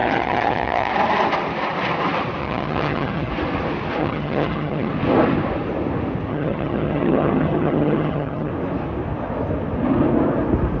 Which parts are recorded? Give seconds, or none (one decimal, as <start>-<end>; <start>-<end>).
0.9-2.4; 3.3-4.0; 4.9-6.3; 8.5-10.8